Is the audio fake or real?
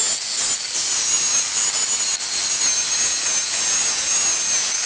real